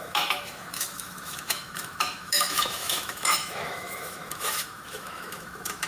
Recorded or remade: remade